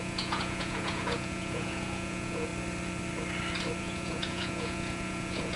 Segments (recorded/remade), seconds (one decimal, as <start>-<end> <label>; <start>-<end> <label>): 0.0-2.5 remade; 2.5-3.8 recorded; 3.8-5.6 remade